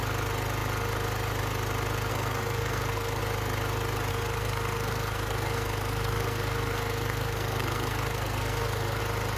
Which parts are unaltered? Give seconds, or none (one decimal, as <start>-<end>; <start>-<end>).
0.0-2.1; 3.2-4.1; 9.0-9.4